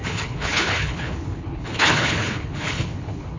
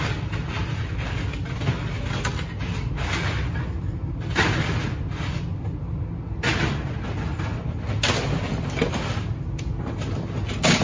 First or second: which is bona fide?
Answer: second